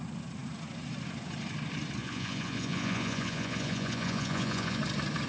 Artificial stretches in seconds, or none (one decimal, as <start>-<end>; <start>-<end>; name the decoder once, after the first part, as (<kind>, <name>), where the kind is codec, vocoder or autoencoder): 2.0-4.8 (vocoder, Vocos)